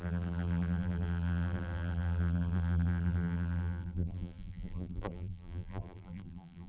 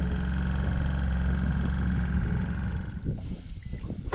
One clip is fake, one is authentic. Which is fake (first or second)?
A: first